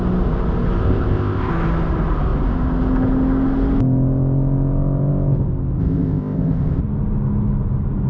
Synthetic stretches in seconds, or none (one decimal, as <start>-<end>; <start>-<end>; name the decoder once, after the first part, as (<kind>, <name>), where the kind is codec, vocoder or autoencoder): 0.8-1.5 (codec, ZipCodec); 5.8-6.8